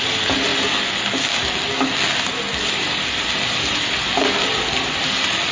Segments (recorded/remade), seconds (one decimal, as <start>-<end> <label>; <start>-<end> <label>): 0.0-5.5 recorded